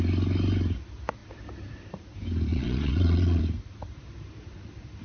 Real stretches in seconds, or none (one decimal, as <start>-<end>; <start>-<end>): 0.0-2.5; 3.4-5.0